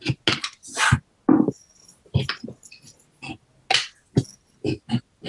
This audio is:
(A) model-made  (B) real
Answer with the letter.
B